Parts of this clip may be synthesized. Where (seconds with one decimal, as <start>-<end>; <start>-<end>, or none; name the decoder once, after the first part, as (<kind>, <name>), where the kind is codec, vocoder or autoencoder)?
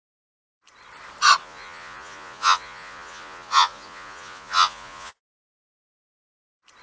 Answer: 1.4-5.5 (vocoder, Vocos)